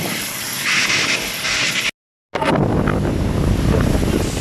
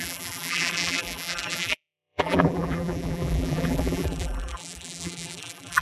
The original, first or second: first